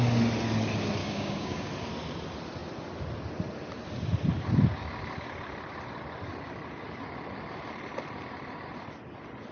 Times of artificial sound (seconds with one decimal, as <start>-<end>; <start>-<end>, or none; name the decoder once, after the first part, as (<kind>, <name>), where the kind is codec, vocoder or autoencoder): 1.0-1.7 (codec, DAC)